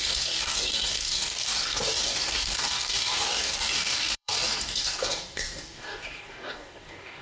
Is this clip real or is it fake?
fake